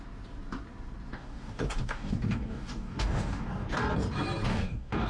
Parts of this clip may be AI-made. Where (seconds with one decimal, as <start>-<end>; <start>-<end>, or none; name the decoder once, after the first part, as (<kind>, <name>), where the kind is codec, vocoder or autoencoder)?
1.1-3.8 (codec, DAC); 4.5-5.1